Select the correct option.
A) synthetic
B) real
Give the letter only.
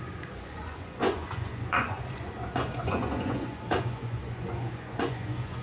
A